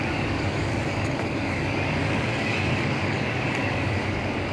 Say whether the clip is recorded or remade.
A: remade